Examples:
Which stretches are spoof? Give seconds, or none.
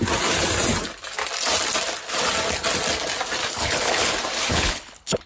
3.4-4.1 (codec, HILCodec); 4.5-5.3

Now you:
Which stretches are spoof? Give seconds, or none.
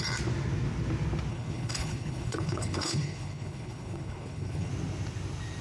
1.3-4.7 (codec, HILCodec)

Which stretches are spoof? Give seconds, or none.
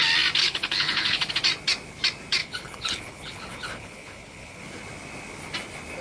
0.4-1.3 (codec, HILCodec); 2.4-4.6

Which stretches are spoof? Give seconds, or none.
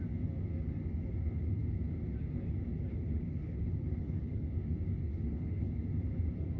2.9-4.3 (codec, HILCodec); 5.1-5.7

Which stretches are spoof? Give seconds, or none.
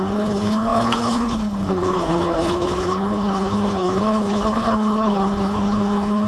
0.0-6.3 (codec, HILCodec)